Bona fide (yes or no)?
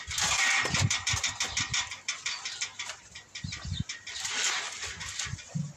no